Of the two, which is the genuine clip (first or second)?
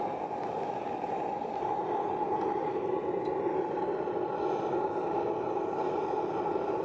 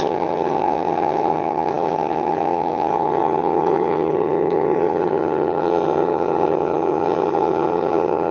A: first